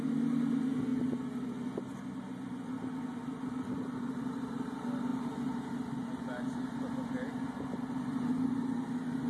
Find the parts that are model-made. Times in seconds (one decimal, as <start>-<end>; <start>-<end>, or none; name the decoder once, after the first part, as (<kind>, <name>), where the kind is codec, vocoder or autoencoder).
none